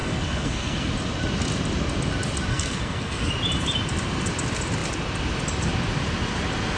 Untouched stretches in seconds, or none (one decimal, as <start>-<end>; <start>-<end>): 0.9-2.5; 3.3-6.8